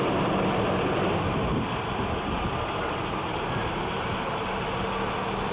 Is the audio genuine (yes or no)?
yes